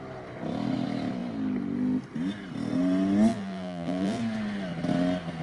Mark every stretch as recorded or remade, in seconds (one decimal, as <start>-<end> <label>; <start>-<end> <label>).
0.0-3.3 recorded; 3.3-4.2 remade; 4.2-5.4 recorded